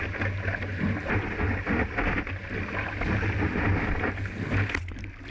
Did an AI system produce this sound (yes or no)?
no